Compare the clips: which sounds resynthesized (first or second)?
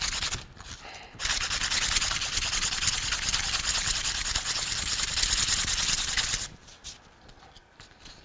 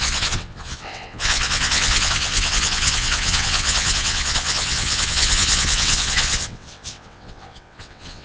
second